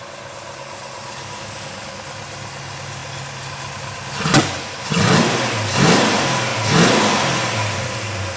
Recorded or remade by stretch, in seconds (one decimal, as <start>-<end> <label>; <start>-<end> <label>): 0.0-8.4 recorded